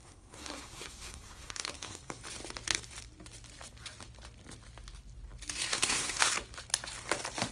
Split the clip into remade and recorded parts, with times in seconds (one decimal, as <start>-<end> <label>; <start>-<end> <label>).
0.0-2.2 remade; 2.2-5.7 recorded; 5.7-6.3 remade; 6.3-7.5 recorded